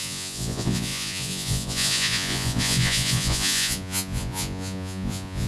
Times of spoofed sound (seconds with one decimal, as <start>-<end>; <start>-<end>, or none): 0.0-5.5